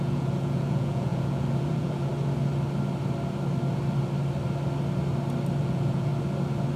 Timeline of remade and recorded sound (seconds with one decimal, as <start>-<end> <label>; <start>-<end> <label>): 0.0-2.1 remade; 2.1-5.6 recorded; 5.6-6.1 remade; 6.1-6.8 recorded